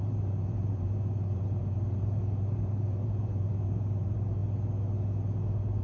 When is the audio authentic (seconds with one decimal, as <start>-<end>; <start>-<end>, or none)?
4.4-5.8